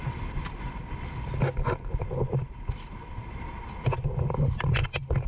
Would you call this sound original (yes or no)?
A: yes